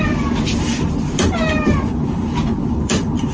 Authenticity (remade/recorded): remade